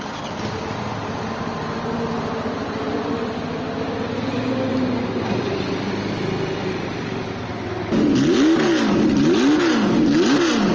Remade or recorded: recorded